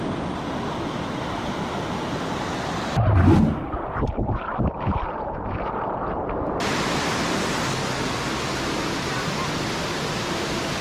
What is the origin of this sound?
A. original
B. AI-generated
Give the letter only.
A